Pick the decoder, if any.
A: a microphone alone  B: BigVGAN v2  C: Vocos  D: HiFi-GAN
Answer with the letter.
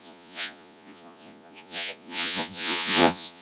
C